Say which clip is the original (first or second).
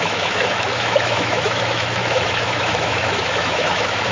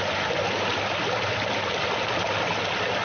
second